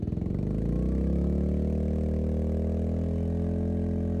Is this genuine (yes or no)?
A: yes